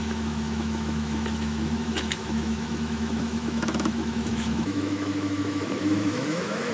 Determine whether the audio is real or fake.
fake